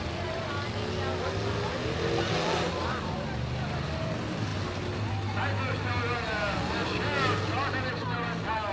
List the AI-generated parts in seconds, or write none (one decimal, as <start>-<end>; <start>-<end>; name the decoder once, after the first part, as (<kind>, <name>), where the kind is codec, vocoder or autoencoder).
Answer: none